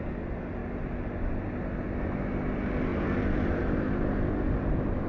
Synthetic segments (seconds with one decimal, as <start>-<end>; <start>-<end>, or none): none